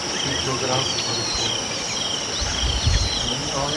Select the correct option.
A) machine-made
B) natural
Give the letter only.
B